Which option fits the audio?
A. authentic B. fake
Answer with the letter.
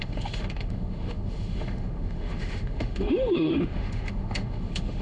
B